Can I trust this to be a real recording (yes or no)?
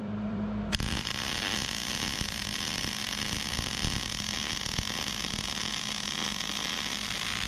no